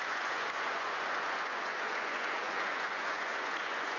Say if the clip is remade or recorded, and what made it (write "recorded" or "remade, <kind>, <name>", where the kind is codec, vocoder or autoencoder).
remade, vocoder, Vocos